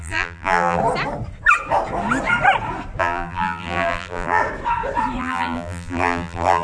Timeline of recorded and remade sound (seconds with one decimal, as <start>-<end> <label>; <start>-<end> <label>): 0.0-0.8 remade; 0.8-3.0 recorded; 3.0-4.4 remade; 4.4-5.2 recorded; 5.2-6.6 remade